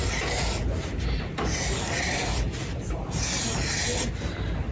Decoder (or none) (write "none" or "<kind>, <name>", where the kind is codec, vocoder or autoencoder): none